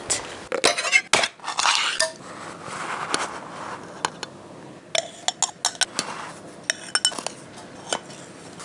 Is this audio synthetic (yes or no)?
no